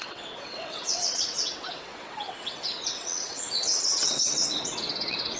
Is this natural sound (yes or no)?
no